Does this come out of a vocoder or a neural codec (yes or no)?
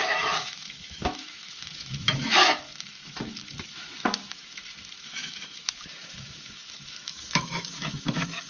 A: yes